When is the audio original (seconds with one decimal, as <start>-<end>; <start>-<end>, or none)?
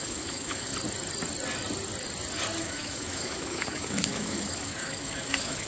0.7-2.6